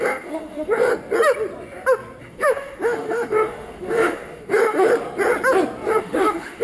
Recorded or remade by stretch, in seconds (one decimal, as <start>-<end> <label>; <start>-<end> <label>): 0.0-0.9 remade; 0.9-2.2 recorded; 2.2-4.9 remade; 4.9-6.0 recorded; 6.0-6.6 remade